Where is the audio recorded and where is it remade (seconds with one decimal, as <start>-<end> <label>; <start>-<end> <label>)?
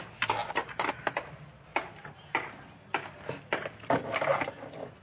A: 0.0-1.7 recorded; 1.7-2.5 remade; 2.5-5.0 recorded